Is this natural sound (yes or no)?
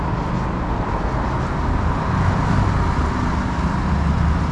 yes